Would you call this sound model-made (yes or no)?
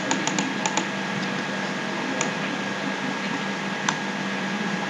no